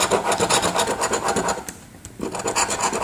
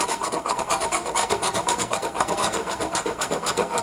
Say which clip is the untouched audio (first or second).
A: first